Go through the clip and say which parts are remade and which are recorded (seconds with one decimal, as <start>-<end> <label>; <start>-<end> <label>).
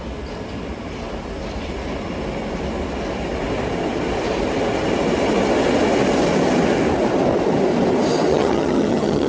0.0-8.3 recorded; 8.3-9.3 remade